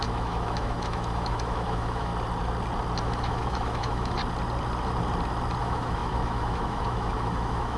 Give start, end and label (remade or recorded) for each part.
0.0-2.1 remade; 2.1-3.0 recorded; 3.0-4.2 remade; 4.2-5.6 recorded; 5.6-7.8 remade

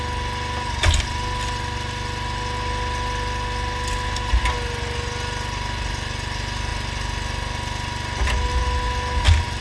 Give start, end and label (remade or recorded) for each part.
0.0-9.6 recorded

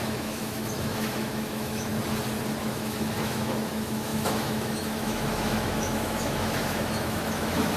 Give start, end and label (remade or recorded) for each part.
0.0-1.9 remade; 1.9-2.6 recorded; 2.6-7.8 remade

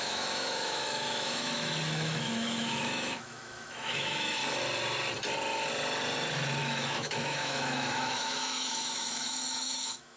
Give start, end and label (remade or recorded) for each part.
0.0-4.4 remade; 4.4-6.6 recorded; 6.6-10.2 remade

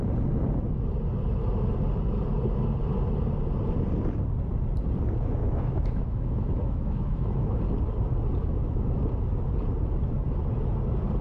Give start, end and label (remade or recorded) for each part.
0.0-5.4 recorded; 5.4-7.6 remade; 7.6-8.4 recorded; 8.4-9.0 remade; 9.0-11.2 recorded